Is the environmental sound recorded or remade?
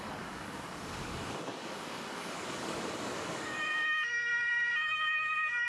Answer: remade